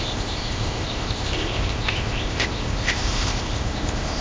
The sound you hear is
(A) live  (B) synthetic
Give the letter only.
B